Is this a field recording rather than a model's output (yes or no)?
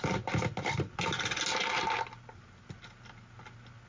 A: yes